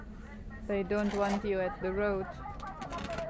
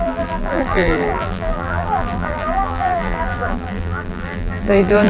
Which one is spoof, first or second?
second